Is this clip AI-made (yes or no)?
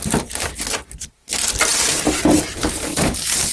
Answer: no